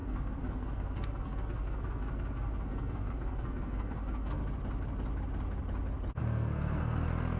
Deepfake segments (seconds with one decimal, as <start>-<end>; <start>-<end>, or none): 0.0-4.4; 6.2-7.4